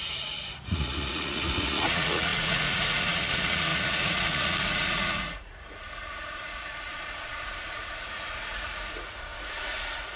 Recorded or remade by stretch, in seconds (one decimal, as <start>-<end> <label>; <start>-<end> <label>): 0.0-10.2 remade